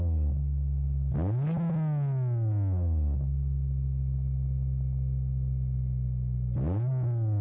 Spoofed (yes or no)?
no